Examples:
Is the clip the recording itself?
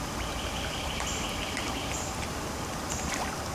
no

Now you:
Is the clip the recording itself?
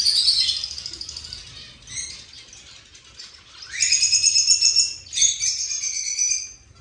yes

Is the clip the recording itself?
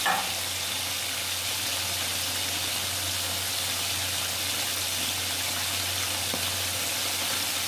yes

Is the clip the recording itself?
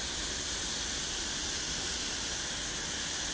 yes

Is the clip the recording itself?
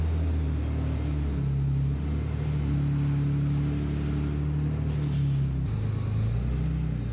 yes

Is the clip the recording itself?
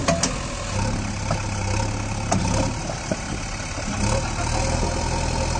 yes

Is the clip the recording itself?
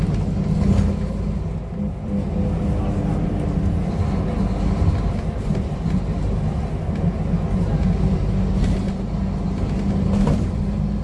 yes